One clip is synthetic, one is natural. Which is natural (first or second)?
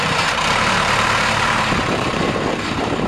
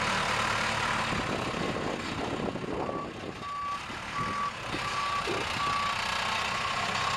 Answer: second